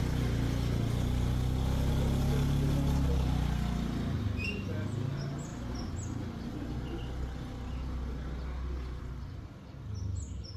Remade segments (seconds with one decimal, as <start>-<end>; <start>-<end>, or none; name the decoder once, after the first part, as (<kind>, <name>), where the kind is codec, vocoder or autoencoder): none